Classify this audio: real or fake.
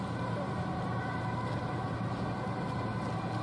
real